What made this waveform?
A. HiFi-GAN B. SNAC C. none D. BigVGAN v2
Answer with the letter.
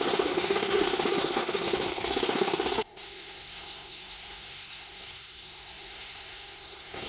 B